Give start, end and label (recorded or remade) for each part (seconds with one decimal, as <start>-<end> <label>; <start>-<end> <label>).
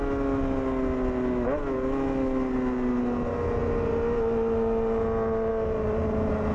0.0-6.5 recorded